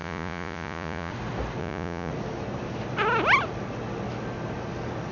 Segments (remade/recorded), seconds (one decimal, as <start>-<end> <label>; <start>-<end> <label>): 0.0-1.1 remade; 1.1-1.6 recorded; 1.6-2.1 remade; 2.1-5.1 recorded